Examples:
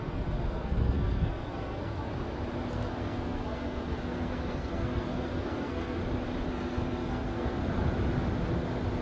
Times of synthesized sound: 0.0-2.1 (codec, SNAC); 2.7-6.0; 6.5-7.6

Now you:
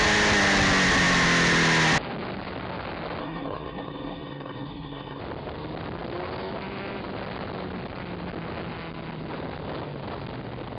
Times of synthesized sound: 3.2-5.2 (codec, SNAC)

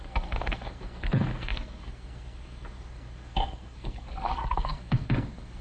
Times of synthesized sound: 0.0-5.6 (codec, SNAC)

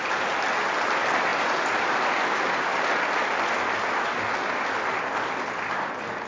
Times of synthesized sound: none

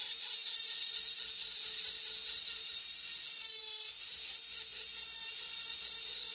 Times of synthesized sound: none

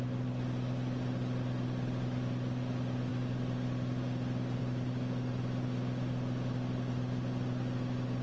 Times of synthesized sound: none

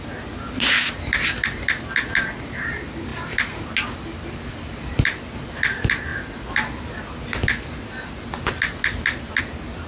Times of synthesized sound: none